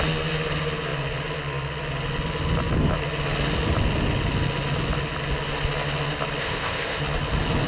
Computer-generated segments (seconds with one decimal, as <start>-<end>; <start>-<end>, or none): 6.4-7.0